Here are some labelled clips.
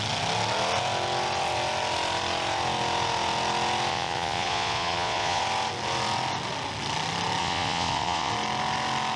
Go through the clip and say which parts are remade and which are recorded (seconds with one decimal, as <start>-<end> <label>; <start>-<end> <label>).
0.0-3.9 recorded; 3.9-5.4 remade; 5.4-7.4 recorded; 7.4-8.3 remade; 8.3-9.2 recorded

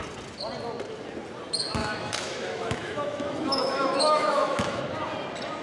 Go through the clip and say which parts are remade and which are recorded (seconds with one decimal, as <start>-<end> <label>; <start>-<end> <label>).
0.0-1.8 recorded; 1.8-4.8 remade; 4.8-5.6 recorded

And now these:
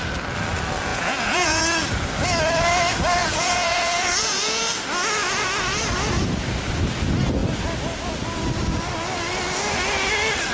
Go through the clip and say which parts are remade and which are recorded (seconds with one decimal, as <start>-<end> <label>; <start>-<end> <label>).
0.0-0.9 recorded; 0.9-1.6 remade; 1.6-3.2 recorded; 3.2-4.6 remade; 4.6-10.5 recorded